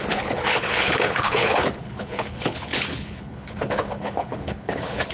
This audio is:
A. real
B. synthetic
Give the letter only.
B